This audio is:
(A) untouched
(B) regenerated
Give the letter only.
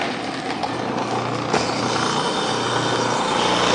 A